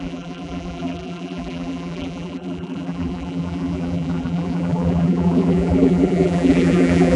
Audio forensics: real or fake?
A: fake